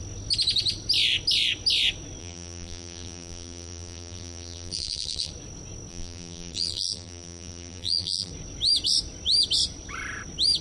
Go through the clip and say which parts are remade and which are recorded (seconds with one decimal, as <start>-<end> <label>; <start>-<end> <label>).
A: 0.0-2.2 recorded; 2.2-5.3 remade; 5.3-5.9 recorded; 5.9-8.3 remade; 8.3-10.6 recorded